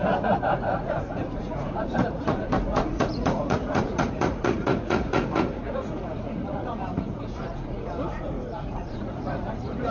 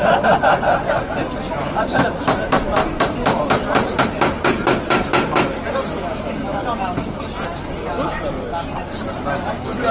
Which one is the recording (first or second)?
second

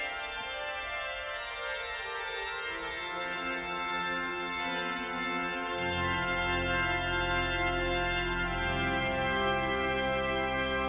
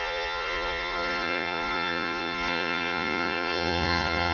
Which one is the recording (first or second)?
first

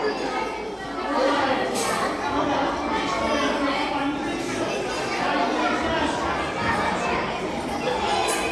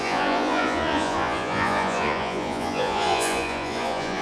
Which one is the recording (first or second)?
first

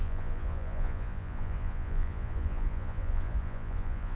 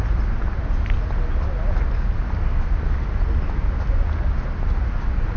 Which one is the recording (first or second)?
second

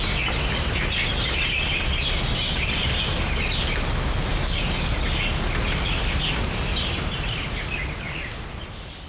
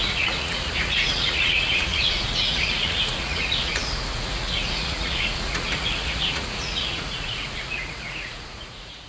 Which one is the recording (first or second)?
first